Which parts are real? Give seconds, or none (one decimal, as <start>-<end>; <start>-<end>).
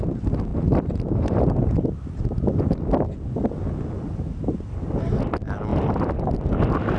0.0-7.0